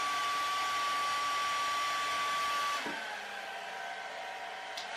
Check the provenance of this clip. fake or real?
real